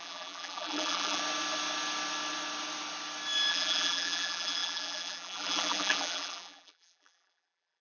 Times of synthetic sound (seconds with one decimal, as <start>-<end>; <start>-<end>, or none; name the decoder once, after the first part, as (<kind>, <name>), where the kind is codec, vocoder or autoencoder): 0.0-1.2 (vocoder, BigVGAN v2); 3.5-7.8